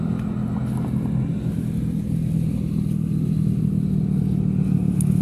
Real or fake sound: real